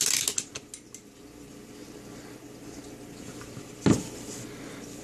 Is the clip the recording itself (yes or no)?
yes